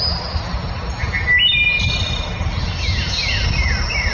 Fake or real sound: real